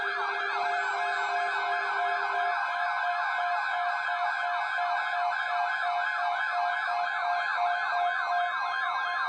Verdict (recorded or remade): recorded